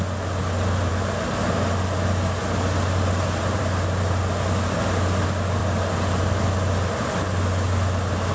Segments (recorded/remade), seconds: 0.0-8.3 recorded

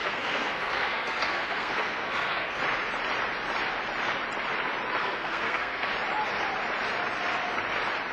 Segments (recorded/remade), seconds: 0.0-2.6 remade; 2.6-5.0 recorded; 5.0-5.9 remade; 5.9-8.1 recorded